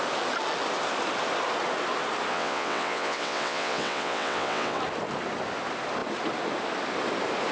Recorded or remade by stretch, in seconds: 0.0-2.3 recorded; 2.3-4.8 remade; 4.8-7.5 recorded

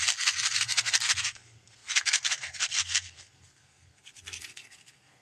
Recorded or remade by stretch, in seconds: 0.0-5.2 remade

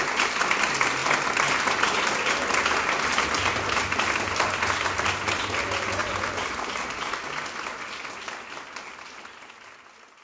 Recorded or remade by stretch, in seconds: 0.0-10.2 recorded

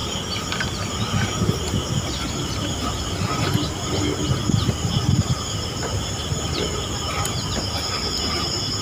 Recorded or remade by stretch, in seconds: 0.0-8.8 recorded

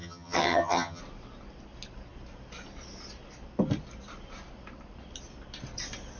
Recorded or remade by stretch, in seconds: 0.0-1.0 remade; 1.0-6.2 recorded

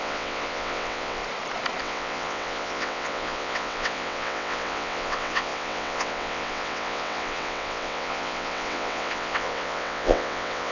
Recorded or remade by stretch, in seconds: 0.0-1.2 remade; 1.2-1.8 recorded; 1.8-10.7 remade